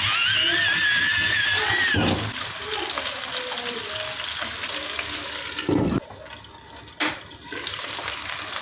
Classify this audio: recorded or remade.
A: recorded